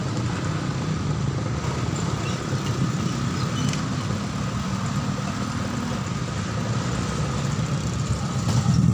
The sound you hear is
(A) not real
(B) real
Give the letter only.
B